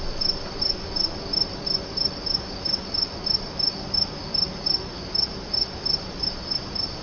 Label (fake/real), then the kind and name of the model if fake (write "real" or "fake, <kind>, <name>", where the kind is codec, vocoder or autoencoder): real